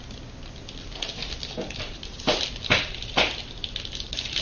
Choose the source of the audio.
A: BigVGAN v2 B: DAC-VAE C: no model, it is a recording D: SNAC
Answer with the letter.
C